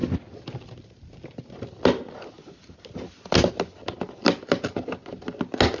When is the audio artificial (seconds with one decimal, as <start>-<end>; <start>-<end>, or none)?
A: none